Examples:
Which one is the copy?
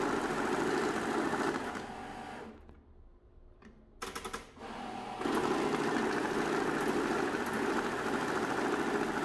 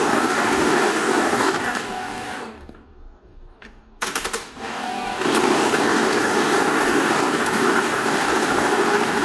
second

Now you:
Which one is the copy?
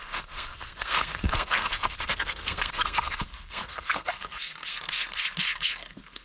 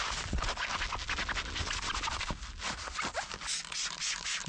first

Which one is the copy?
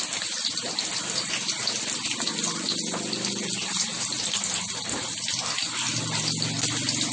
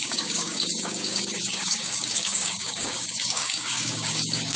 second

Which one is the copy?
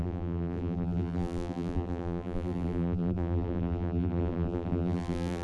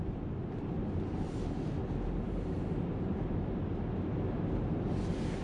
first